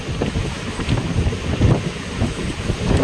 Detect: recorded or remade recorded